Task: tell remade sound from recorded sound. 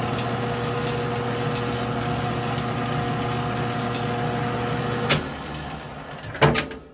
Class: recorded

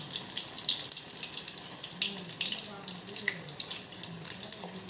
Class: recorded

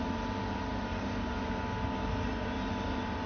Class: remade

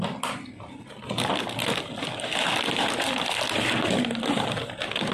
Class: recorded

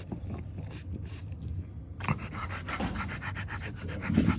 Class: recorded